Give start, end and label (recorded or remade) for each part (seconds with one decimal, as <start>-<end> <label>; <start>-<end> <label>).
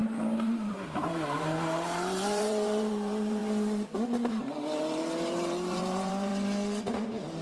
0.0-3.4 remade; 3.4-4.3 recorded; 4.3-6.3 remade; 6.3-6.9 recorded; 6.9-7.4 remade